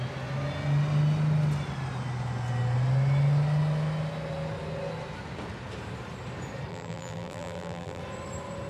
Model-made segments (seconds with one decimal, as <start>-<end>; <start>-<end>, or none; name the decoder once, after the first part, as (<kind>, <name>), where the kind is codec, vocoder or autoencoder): 6.7-8.0 (vocoder, BigVGAN v2)